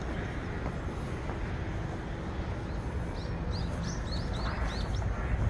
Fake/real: real